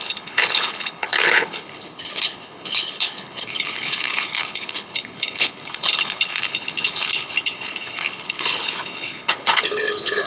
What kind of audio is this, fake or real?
fake